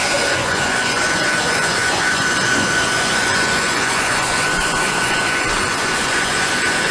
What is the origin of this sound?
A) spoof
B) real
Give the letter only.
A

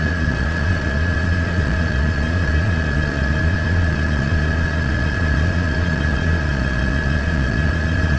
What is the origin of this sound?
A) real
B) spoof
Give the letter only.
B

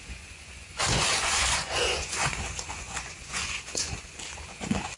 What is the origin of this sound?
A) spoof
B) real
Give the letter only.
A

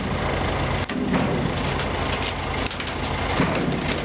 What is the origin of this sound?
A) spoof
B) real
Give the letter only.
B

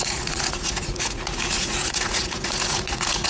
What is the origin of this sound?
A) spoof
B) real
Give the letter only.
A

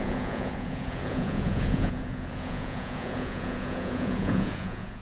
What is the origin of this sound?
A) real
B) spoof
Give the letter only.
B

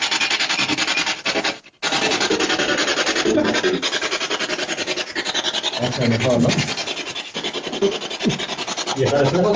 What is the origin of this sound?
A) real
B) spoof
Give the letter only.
A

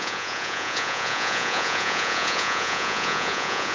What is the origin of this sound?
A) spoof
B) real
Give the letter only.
A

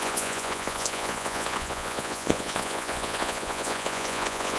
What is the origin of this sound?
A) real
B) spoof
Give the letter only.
B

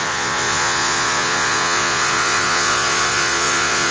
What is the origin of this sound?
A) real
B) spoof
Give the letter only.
B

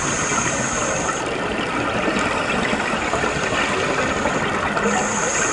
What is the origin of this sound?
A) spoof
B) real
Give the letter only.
B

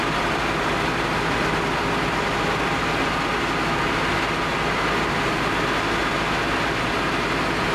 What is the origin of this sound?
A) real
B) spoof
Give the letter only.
A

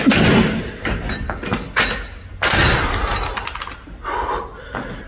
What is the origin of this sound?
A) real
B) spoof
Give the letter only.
A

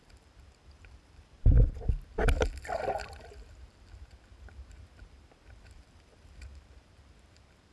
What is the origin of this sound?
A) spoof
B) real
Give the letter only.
B